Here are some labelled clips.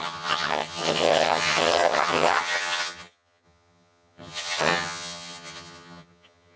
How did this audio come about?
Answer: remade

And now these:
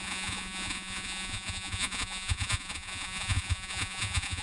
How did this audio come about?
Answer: remade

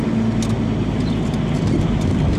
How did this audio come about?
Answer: recorded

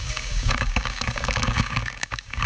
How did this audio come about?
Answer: remade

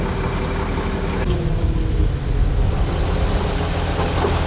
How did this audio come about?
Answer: recorded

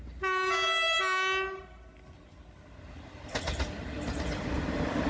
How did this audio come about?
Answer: recorded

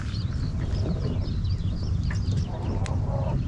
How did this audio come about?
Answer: recorded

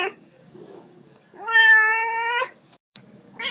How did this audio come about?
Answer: remade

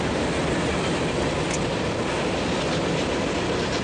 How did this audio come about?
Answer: recorded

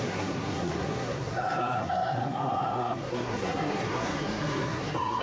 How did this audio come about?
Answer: remade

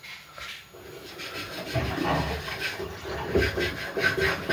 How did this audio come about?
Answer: recorded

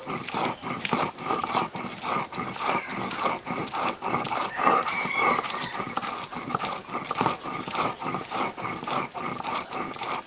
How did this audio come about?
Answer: remade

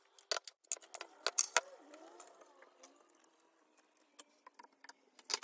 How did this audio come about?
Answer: recorded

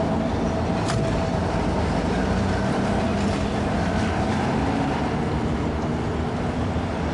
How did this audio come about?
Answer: recorded